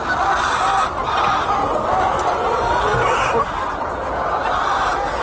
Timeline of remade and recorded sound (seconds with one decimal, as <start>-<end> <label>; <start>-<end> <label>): 0.0-5.2 recorded